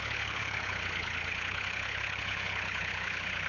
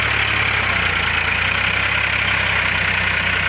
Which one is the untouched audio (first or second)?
second